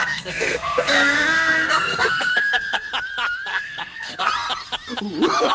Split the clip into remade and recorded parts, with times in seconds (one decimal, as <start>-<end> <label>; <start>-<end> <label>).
0.0-2.9 remade; 2.9-3.5 recorded; 3.5-4.3 remade; 4.3-5.5 recorded

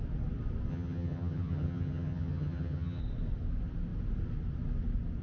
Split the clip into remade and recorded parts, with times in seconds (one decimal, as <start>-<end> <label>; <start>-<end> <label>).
0.0-0.7 recorded; 0.7-3.0 remade; 3.0-5.2 recorded

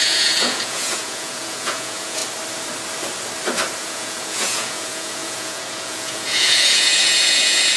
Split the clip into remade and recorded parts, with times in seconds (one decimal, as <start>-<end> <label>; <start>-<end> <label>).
0.0-2.2 remade; 2.2-3.8 recorded; 3.8-7.8 remade

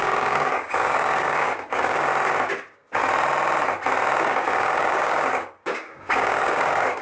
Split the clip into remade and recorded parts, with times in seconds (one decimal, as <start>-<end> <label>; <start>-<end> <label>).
0.0-2.1 remade; 2.1-2.6 recorded; 2.6-3.0 remade; 3.0-4.2 recorded; 4.2-7.0 remade

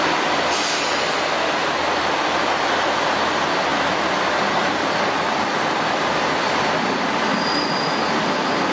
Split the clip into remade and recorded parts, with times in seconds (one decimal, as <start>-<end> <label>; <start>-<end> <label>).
0.0-8.7 recorded

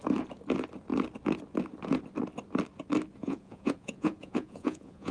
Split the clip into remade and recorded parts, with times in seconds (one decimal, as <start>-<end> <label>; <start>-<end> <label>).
0.0-3.2 recorded; 3.2-5.1 remade

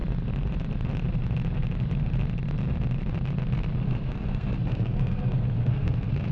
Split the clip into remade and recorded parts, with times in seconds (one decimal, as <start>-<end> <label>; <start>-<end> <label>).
0.0-3.8 recorded; 3.8-6.3 remade